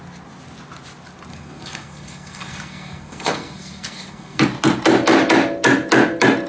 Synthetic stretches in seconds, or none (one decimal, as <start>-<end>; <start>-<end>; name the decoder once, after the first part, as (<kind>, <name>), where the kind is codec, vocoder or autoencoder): 1.3-4.4 (codec, SNAC)